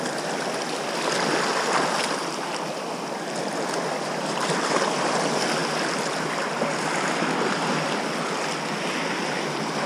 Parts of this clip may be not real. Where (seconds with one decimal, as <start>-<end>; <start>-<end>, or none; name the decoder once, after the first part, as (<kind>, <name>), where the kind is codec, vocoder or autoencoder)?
none